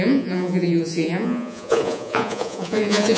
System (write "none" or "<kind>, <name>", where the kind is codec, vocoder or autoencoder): vocoder, Vocos